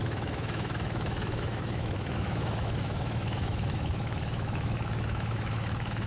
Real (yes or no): no